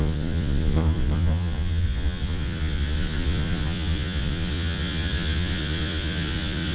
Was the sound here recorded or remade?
remade